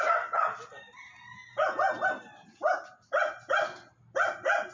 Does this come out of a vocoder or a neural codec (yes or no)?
no